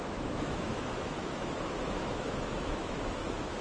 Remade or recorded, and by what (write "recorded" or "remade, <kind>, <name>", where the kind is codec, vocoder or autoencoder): remade, autoencoder, DAC-VAE